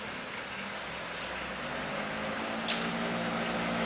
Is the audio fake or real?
real